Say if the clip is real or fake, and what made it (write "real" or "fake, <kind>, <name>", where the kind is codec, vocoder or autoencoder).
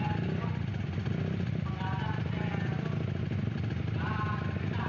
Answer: real